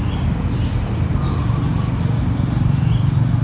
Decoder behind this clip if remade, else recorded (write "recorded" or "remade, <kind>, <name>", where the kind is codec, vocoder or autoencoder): recorded